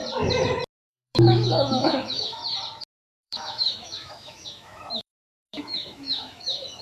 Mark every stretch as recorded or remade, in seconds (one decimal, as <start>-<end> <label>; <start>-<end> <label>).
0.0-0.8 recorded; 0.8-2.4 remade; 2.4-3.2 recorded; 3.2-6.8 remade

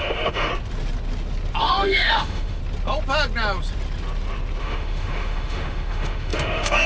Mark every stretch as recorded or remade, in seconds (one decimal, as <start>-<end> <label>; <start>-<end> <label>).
0.0-0.5 remade; 0.5-1.6 recorded; 1.6-2.6 remade; 2.6-4.6 recorded; 4.6-6.9 remade

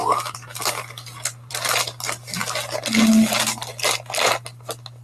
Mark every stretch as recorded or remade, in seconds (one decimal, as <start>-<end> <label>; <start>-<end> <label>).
0.0-5.0 recorded

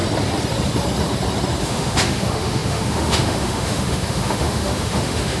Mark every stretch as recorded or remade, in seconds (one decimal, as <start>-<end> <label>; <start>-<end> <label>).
0.0-1.6 recorded; 1.6-5.4 remade